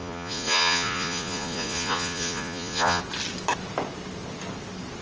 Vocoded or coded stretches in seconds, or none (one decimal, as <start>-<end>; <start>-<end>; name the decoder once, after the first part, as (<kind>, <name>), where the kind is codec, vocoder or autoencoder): 0.0-3.0 (vocoder, Vocos)